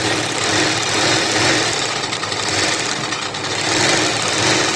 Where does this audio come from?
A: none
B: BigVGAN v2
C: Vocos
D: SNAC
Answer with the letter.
A